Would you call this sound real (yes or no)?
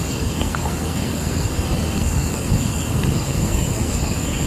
no